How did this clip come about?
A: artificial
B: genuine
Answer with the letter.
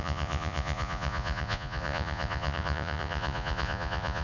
A